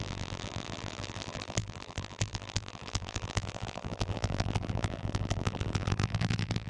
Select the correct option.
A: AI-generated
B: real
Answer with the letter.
A